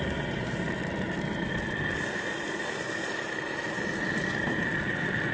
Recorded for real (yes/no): yes